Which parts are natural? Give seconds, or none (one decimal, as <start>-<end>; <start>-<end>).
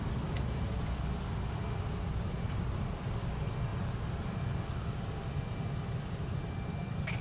0.0-7.2